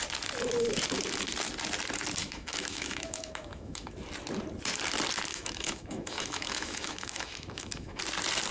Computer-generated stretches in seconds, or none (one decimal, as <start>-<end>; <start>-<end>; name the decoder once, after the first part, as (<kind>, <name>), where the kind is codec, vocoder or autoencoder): 2.2-3.9 (autoencoder, DAC-VAE); 5.3-8.0